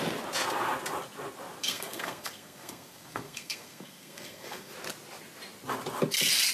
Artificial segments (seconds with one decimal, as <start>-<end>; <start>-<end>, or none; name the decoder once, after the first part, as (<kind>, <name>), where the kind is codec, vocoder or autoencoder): 1.6-4.7 (codec, SNAC)